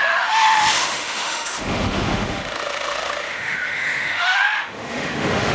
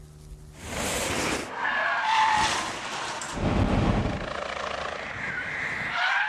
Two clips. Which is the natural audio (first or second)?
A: second